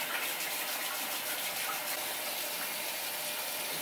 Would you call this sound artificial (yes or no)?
no